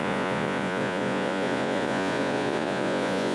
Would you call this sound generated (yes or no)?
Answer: yes